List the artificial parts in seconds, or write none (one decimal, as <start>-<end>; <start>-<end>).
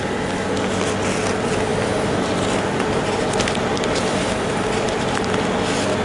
1.7-5.3